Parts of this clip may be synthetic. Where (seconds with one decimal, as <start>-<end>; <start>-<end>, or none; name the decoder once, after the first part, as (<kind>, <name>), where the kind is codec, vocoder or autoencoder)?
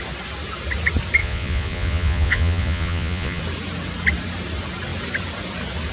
1.2-3.4 (vocoder, Vocos)